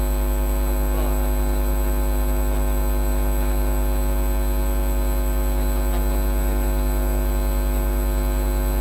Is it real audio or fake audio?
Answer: real